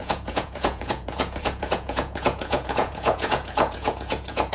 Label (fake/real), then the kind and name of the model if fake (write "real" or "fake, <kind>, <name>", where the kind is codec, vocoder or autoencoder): fake, vocoder, Vocos